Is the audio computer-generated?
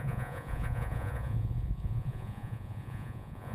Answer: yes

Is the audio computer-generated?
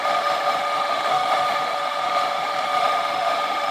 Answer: yes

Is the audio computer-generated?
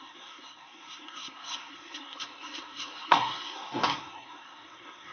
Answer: yes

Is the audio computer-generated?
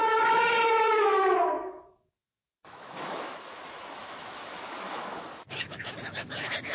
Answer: yes